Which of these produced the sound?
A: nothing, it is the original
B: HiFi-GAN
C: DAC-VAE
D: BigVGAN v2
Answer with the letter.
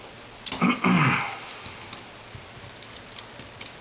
A